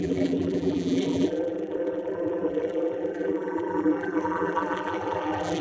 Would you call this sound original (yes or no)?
no